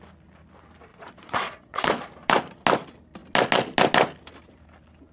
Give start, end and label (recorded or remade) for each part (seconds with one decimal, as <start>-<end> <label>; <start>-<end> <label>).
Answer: 0.0-0.9 recorded; 0.9-2.0 remade; 2.0-5.1 recorded